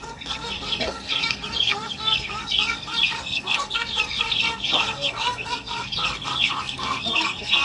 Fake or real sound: fake